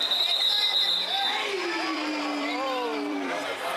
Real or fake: fake